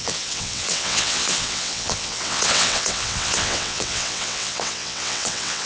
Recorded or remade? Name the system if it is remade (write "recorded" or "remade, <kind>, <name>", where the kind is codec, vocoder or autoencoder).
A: remade, vocoder, WaveNeXt